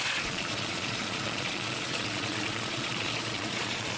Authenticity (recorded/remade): remade